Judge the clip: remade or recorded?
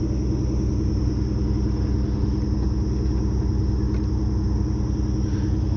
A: recorded